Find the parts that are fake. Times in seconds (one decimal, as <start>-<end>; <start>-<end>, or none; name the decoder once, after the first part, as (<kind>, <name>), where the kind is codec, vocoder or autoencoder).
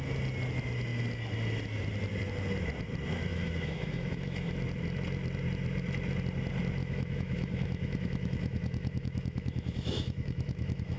3.3-4.5 (autoencoder, DAC-VAE); 6.8-11.0